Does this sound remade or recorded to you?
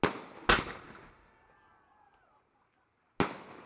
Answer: recorded